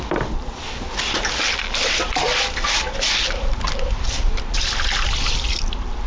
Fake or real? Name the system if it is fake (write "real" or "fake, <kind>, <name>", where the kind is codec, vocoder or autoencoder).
real